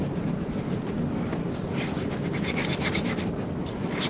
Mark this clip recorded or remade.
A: recorded